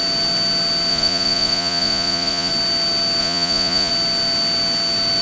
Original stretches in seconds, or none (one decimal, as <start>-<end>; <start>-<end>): 0.0-0.9; 2.5-3.2; 3.9-5.2